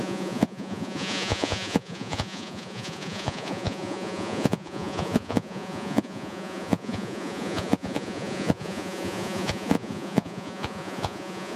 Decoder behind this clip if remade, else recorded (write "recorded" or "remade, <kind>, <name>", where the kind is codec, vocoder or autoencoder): remade, vocoder, Vocos